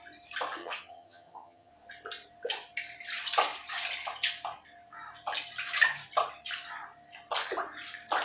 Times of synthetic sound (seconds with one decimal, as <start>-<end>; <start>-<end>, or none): 0.6-1.7